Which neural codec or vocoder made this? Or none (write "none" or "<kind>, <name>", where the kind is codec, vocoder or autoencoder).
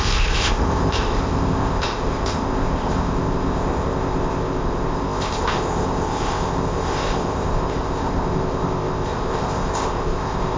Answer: codec, ZipCodec